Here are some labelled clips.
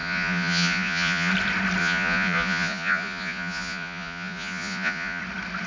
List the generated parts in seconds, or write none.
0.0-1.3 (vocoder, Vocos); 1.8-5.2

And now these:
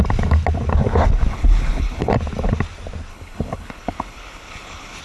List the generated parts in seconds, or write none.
1.3-2.1 (codec, HILCodec); 3.1-5.0

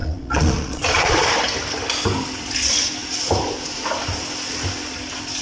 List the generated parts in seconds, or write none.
0.0-1.3 (vocoder, Vocos)

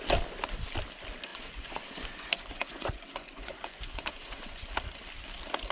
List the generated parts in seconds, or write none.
1.3-4.7 (vocoder, Vocos)